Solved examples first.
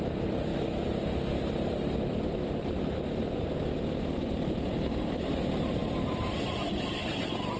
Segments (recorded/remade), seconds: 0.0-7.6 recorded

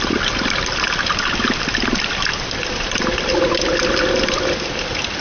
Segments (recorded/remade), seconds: 0.0-5.2 recorded

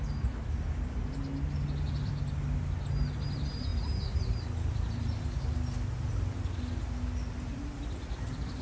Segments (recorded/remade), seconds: 0.0-8.6 recorded

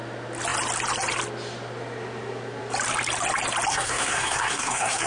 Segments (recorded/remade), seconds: 0.0-3.7 recorded; 3.7-5.1 remade

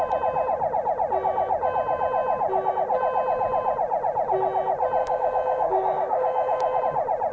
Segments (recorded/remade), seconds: 0.0-5.0 recorded; 5.0-6.8 remade; 6.8-7.3 recorded

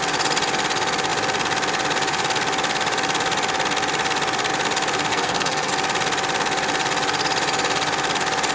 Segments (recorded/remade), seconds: 0.0-5.1 recorded; 5.1-5.7 remade; 5.7-8.5 recorded